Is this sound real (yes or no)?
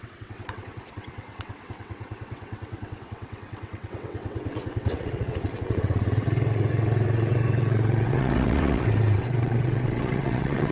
no